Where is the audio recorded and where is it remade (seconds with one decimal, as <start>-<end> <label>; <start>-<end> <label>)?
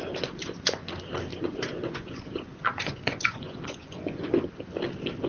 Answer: 0.0-0.4 recorded; 0.4-0.9 remade; 0.9-1.3 recorded; 1.3-4.3 remade; 4.3-5.3 recorded